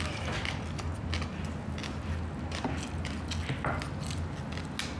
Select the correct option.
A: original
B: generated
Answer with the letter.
A